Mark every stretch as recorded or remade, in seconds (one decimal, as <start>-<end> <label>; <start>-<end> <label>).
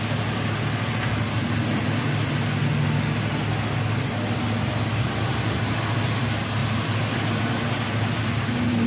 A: 0.0-8.9 recorded